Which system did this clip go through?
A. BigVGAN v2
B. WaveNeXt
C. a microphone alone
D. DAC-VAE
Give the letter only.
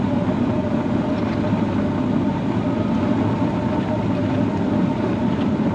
C